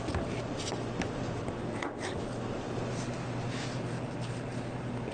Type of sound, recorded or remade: recorded